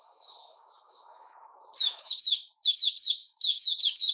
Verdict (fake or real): fake